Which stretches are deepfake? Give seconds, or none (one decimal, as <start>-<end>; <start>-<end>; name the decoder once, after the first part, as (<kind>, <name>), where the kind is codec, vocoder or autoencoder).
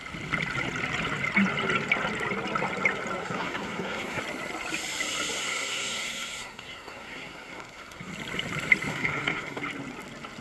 3.2-4.2 (codec, SNAC); 5.4-8.1; 8.9-9.6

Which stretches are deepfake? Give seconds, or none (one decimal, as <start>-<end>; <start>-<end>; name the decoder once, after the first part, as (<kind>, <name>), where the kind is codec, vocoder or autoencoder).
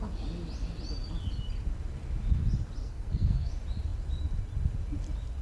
2.8-3.5 (codec, SNAC)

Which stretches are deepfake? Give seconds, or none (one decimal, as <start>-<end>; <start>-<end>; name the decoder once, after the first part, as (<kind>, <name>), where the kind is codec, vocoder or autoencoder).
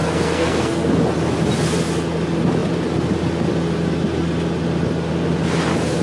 0.0-0.9 (codec, SNAC)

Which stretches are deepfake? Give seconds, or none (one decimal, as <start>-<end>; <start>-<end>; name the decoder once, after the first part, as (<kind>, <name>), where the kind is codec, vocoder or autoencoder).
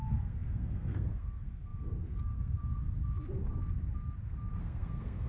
0.0-2.7 (codec, SNAC); 4.6-5.3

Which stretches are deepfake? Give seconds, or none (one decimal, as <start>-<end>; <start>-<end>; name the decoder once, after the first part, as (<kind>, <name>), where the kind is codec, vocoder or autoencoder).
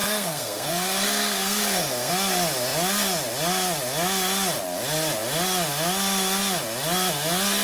0.0-2.1 (codec, SNAC)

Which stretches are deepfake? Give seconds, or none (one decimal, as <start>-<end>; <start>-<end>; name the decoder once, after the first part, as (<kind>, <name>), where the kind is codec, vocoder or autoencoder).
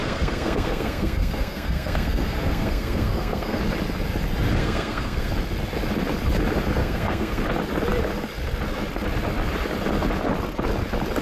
0.0-3.6 (codec, SNAC); 4.6-5.3; 6.8-7.4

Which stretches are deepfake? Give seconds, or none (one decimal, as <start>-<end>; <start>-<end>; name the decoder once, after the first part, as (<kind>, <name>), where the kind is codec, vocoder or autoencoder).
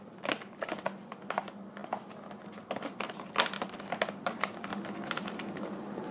none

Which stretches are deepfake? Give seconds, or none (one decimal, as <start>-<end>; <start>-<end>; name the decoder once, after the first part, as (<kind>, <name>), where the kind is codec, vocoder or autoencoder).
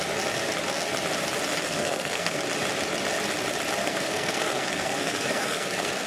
1.5-2.4 (codec, SNAC); 3.8-6.1